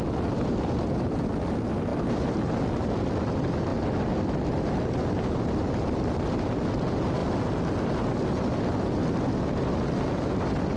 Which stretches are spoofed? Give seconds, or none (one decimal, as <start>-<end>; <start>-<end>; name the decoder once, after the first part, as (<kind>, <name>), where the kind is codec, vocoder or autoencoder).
none